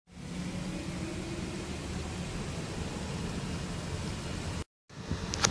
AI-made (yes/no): no